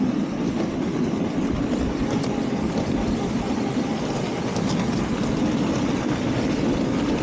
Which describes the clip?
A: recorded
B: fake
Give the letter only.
A